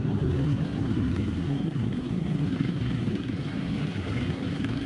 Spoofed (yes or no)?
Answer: yes